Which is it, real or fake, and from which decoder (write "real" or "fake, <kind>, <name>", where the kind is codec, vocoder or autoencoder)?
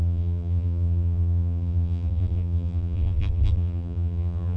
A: fake, vocoder, BigVGAN v2